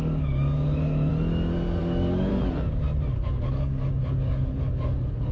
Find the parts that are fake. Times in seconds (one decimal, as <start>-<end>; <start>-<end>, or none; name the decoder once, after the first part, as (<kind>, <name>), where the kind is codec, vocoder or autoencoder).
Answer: 0.0-1.1 (codec, DAC); 1.8-2.3; 3.1-5.3